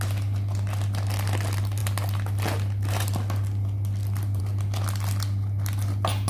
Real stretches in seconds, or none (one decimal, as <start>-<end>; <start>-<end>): 0.0-6.3